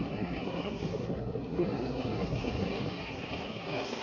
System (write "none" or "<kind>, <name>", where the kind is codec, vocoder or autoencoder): codec, SNAC